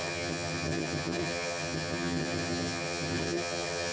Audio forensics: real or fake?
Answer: fake